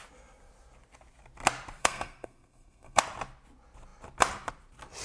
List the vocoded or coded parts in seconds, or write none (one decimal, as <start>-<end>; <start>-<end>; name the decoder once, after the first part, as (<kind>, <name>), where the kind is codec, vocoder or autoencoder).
1.8-3.0 (codec, SNAC)